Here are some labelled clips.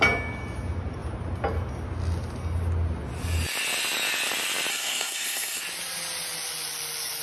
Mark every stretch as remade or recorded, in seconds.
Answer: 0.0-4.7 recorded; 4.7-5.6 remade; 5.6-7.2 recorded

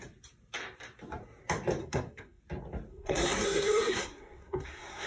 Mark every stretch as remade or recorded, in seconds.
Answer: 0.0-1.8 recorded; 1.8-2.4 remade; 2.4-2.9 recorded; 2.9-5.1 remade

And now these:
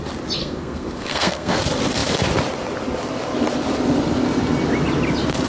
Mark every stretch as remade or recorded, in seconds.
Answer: 0.0-0.4 recorded; 0.4-1.6 remade; 1.6-5.5 recorded

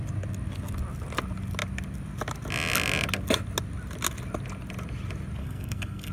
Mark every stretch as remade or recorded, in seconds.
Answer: 0.0-5.4 recorded; 5.4-6.1 remade

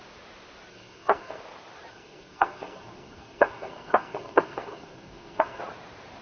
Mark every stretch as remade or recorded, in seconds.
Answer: 0.0-0.7 recorded; 0.7-1.4 remade; 1.4-1.9 recorded; 1.9-5.6 remade; 5.6-6.2 recorded

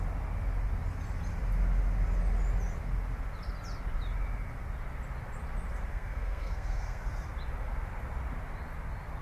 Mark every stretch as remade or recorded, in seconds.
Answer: 0.0-5.9 recorded; 5.9-7.0 remade; 7.0-9.2 recorded